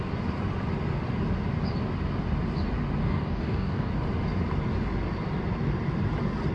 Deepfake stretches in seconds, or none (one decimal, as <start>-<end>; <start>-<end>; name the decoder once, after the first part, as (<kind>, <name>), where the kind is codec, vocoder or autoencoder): 3.0-3.9 (codec, DAC)